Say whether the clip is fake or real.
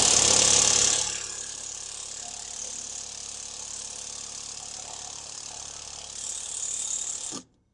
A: fake